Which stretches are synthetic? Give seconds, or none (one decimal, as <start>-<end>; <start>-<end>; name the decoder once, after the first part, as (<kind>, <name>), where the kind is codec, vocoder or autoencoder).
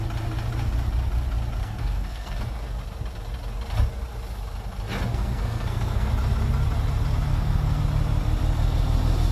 1.6-2.4 (codec, SNAC); 5.1-6.1; 7.3-7.8